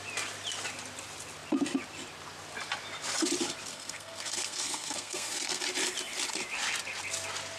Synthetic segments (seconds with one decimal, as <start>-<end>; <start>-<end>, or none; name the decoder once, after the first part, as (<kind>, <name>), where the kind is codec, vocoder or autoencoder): 3.7-5.6 (codec, SNAC)